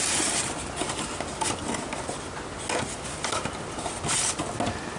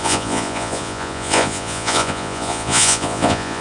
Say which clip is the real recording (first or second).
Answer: first